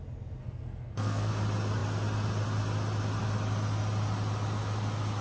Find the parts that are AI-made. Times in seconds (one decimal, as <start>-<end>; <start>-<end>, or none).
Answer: 0.4-1.3